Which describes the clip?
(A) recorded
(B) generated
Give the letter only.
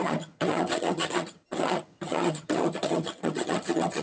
B